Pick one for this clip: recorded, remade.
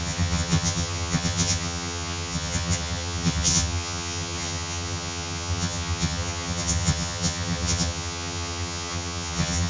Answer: remade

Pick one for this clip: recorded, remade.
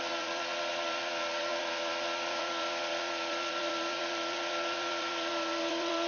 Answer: remade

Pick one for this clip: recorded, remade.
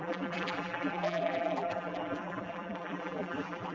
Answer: remade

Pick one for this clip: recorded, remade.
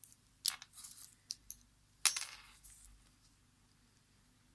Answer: recorded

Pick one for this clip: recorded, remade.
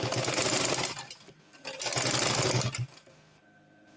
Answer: recorded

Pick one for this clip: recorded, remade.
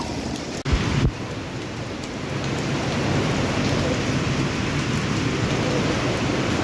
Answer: recorded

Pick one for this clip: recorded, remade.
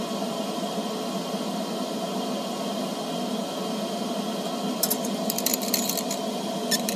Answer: recorded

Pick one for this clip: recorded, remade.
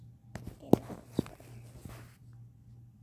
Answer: recorded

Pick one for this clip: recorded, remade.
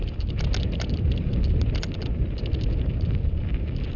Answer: recorded